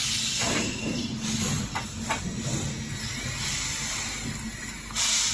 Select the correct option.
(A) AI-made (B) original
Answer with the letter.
B